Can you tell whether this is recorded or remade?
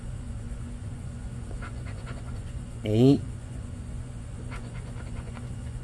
remade